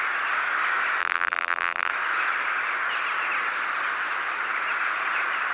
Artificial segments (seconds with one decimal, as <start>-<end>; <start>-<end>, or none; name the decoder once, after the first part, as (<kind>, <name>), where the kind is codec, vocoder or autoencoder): 1.0-1.9 (vocoder, BigVGAN v2)